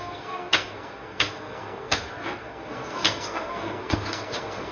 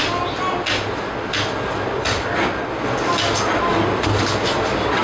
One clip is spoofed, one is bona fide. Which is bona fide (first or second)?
second